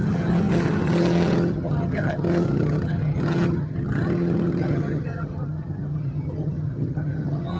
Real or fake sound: fake